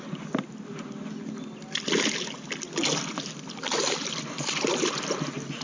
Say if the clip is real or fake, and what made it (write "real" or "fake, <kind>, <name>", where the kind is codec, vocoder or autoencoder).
real